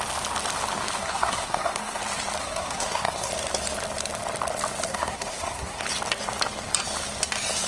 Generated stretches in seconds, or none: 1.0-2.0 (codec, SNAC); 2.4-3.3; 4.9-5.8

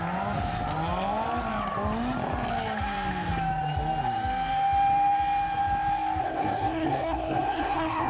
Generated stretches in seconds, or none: 6.2-8.1 (codec, SNAC)

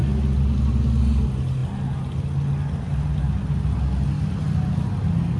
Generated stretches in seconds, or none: none